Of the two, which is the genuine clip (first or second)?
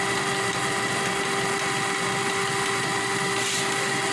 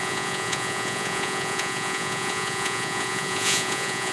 first